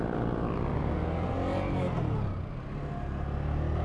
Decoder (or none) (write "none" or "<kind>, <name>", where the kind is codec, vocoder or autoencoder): none